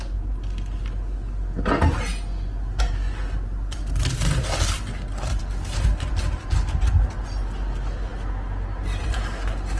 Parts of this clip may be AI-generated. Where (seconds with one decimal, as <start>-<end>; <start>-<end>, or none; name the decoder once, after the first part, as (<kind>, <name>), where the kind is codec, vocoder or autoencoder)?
none